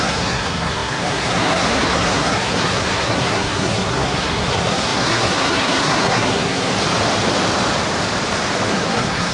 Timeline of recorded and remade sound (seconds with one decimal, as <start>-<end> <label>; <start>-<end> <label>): 0.0-6.7 remade; 6.7-8.7 recorded; 8.7-9.3 remade